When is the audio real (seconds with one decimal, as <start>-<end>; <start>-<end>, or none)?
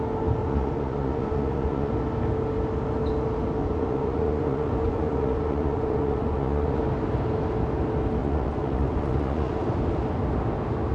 0.0-0.4; 1.9-3.6; 6.8-8.2; 9.6-10.9